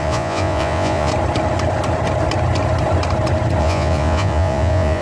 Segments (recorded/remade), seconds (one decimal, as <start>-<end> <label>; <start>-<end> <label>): 0.0-1.1 remade; 1.1-3.6 recorded; 3.6-5.0 remade